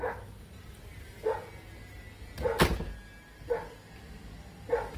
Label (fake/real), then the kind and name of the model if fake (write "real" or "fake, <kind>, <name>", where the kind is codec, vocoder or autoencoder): real